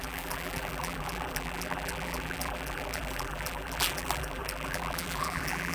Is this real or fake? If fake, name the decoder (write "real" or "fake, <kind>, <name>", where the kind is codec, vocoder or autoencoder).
fake, vocoder, BigVGAN v2